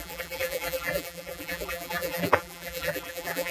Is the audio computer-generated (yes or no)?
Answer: yes